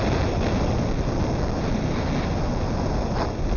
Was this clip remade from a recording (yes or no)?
no